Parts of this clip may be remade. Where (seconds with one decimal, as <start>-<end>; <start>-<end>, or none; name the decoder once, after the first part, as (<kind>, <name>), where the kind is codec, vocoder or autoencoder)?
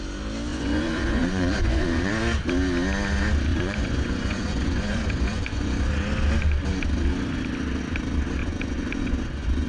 0.5-2.1 (vocoder, Vocos); 3.5-5.9; 8.4-9.7